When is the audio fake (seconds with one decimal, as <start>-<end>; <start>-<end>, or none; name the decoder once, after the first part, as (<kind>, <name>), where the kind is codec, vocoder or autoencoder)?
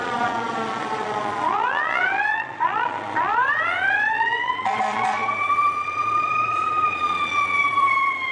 0.0-8.3 (vocoder, Vocos)